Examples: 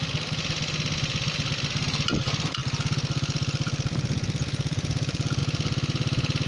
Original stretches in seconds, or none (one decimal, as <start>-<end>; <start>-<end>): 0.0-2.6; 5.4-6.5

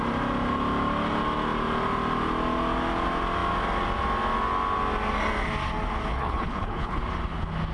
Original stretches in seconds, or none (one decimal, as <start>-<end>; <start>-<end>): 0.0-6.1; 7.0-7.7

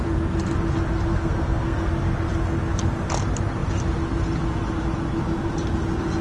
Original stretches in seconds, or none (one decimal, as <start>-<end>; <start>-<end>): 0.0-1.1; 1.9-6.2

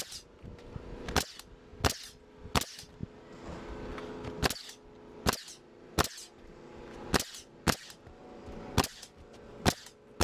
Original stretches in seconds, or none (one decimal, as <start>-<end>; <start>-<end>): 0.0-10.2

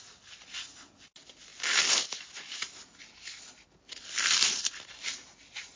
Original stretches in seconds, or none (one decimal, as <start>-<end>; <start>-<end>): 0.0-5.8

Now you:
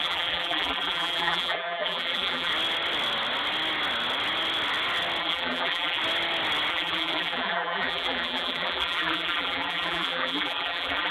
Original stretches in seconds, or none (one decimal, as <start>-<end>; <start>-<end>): 2.5-5.2; 6.0-6.7

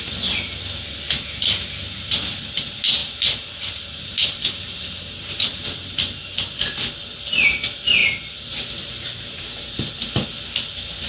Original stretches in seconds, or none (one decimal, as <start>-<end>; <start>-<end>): 0.0-3.0; 5.1-8.0; 8.6-11.1